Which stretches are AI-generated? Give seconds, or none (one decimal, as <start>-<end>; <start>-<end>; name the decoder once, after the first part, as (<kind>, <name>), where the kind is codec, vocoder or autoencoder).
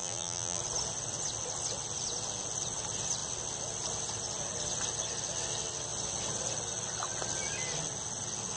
0.0-0.6 (vocoder, BigVGAN v2)